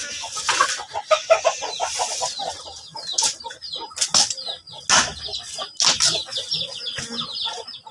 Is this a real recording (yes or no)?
yes